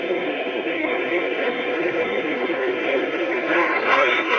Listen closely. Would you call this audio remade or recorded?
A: remade